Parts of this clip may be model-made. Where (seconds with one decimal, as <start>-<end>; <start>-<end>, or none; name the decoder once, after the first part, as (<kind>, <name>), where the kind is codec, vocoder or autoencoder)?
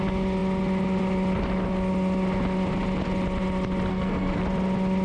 3.9-4.4 (codec, SNAC)